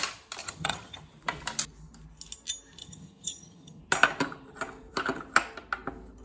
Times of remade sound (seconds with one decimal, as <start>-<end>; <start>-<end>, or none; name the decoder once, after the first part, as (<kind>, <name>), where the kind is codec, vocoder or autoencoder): 0.4-1.0 (vocoder, HiFi-GAN); 2.8-3.8